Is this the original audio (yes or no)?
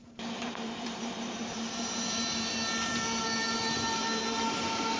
no